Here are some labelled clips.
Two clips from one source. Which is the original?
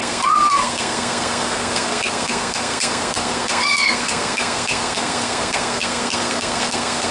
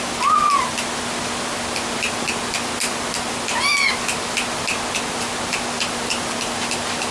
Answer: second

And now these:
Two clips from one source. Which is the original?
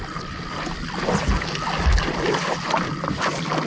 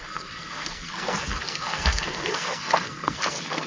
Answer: first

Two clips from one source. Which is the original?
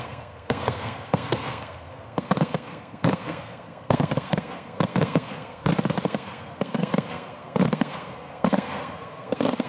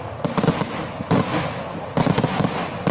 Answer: second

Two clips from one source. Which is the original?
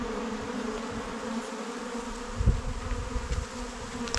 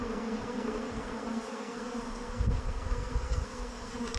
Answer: first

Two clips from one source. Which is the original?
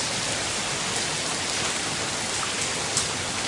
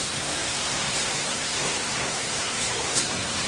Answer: first